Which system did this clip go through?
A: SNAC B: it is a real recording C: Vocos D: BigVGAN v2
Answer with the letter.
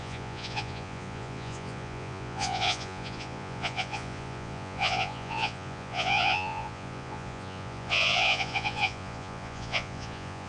C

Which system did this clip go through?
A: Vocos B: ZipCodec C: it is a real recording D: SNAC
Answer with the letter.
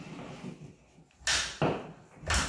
C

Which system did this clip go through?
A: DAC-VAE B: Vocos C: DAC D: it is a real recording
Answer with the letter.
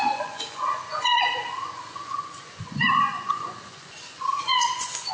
B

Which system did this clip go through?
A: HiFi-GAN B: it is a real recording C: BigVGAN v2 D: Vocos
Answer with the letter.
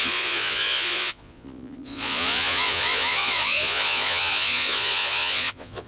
D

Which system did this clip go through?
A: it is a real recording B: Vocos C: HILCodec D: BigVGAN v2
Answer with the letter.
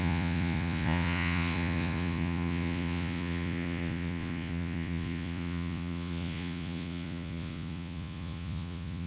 B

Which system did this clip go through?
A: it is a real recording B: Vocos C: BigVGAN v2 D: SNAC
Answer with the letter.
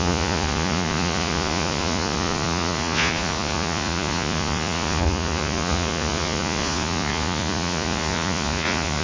B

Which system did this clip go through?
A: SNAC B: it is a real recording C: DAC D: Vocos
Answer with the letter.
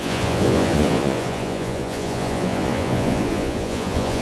D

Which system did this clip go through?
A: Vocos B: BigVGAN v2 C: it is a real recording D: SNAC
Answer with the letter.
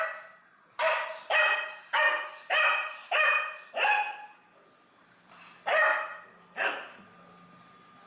C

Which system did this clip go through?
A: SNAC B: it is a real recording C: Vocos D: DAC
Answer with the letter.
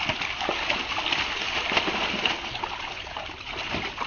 B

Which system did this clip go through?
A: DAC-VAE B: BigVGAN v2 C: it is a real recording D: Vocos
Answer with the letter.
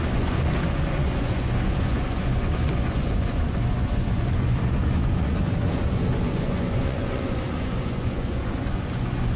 D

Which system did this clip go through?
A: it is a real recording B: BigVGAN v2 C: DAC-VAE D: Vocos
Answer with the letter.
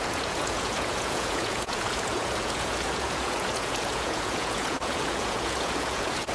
D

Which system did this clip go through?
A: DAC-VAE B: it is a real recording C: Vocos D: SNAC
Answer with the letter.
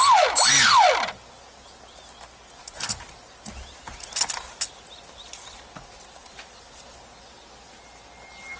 B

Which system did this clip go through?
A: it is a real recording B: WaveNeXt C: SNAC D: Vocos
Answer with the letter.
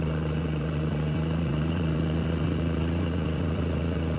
D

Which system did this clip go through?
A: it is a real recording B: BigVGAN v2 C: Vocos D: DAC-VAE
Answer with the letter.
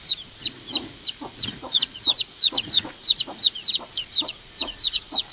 C